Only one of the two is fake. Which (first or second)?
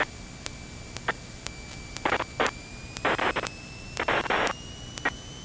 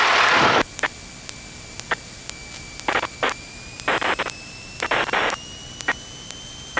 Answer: second